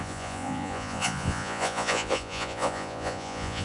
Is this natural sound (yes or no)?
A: no